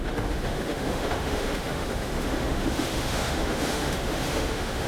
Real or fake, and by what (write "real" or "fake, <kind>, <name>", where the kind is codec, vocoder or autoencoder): fake, autoencoder, DAC-VAE